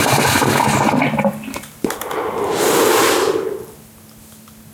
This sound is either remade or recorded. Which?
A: recorded